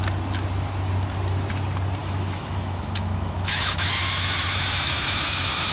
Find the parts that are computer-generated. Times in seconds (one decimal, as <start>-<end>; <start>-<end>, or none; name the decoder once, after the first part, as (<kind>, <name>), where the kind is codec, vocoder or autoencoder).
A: 2.0-5.7 (autoencoder, DAC-VAE)